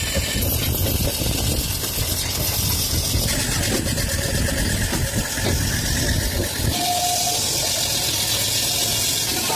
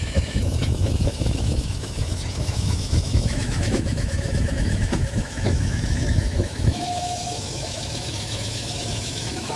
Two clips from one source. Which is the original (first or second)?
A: first